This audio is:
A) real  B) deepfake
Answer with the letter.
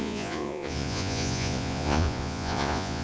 B